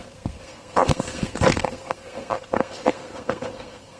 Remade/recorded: remade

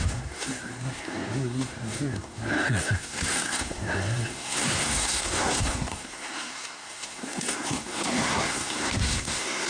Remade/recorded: remade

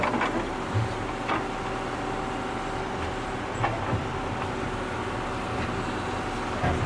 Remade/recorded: recorded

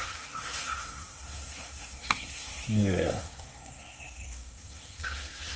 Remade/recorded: remade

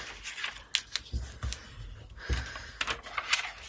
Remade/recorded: recorded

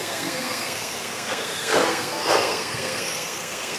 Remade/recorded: remade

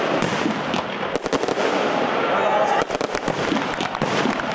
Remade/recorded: recorded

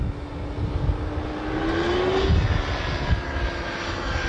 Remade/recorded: recorded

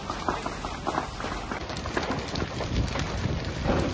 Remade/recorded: recorded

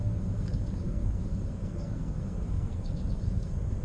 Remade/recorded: remade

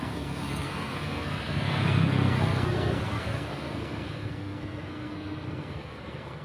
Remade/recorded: remade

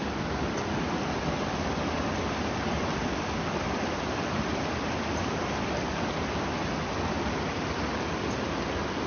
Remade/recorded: recorded